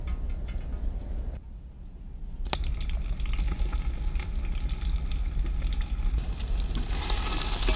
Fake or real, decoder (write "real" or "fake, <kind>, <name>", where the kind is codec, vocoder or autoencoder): real